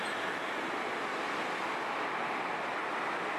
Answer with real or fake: real